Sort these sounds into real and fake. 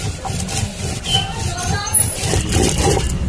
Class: real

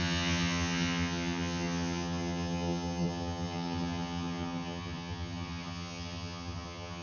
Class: fake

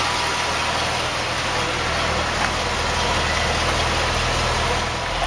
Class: real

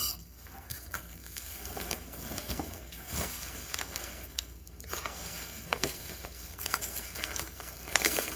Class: fake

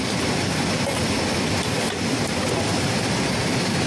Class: fake